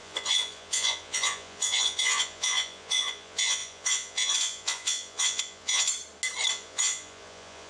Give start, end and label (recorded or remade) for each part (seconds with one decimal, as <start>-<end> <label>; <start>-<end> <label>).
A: 0.0-5.9 remade; 5.9-6.5 recorded; 6.5-7.7 remade